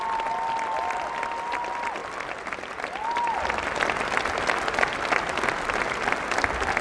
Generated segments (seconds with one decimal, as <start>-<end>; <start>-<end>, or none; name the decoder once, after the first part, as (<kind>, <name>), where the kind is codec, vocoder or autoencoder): none